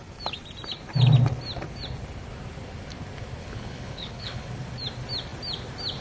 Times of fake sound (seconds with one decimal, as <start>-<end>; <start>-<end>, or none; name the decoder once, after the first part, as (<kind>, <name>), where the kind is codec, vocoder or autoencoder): 3.4-4.5 (codec, HILCodec)